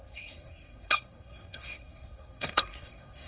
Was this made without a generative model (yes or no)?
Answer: no